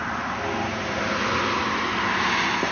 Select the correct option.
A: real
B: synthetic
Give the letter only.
A